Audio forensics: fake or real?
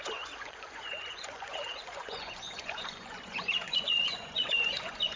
fake